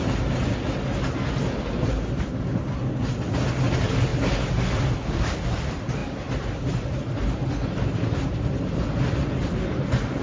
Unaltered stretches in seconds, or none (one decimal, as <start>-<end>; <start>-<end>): 0.0-10.2